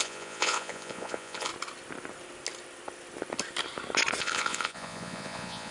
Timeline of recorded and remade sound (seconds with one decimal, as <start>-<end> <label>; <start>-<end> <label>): 0.0-1.5 remade; 1.5-4.2 recorded; 4.2-5.7 remade